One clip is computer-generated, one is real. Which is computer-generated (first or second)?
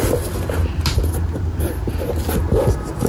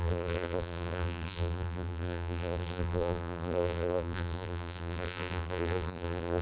second